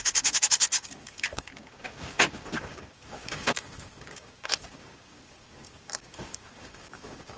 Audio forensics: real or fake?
fake